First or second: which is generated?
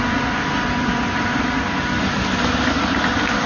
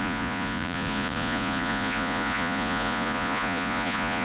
second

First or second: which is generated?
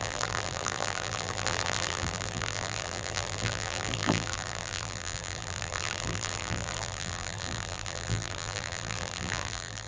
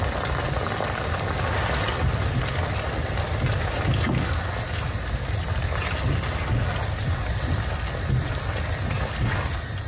first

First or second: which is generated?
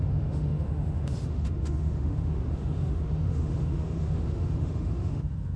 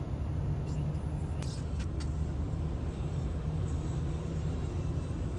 first